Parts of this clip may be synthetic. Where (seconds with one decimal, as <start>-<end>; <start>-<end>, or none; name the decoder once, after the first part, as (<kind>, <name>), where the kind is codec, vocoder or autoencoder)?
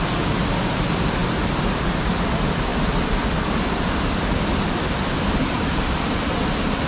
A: 1.2-2.0 (vocoder, BigVGAN v2); 2.7-6.9